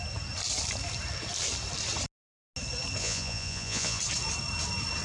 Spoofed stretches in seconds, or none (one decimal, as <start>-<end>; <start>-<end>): 3.0-4.0